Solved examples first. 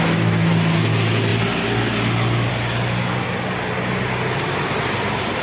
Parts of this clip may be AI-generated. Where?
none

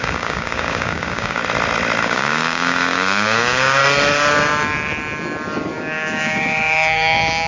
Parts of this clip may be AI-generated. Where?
0.0-1.4 (codec, DAC); 2.0-3.8; 5.8-7.5

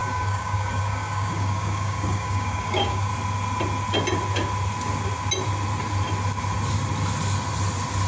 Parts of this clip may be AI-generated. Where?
0.0-3.1 (codec, DAC)